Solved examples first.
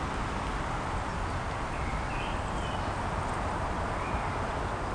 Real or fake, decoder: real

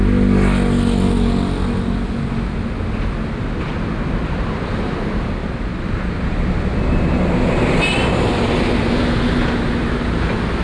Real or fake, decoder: real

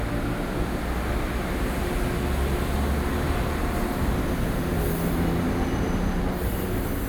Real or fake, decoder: real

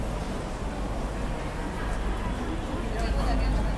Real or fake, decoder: real